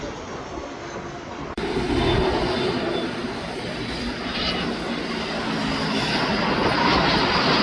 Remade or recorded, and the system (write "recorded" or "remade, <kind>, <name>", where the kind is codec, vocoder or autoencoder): recorded